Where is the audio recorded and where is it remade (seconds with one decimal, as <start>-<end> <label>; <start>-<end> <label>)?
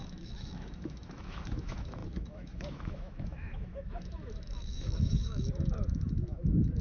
0.0-6.8 remade